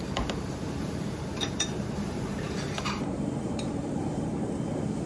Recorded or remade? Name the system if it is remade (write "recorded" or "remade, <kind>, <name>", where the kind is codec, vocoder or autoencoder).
remade, vocoder, BigVGAN v2